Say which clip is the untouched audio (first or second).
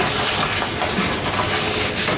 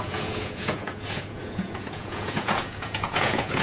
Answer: first